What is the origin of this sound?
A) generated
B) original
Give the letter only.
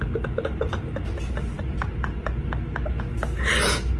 B